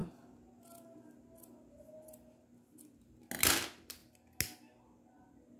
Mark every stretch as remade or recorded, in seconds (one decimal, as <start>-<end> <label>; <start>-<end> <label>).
0.0-5.6 recorded